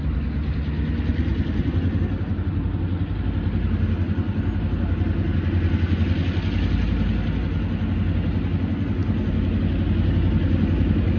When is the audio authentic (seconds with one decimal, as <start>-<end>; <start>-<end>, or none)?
0.0-11.2